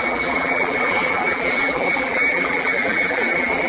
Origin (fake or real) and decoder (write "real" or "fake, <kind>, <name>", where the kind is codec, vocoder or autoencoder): fake, vocoder, BigVGAN v2